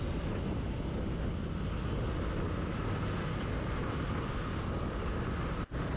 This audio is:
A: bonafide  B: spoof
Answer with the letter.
A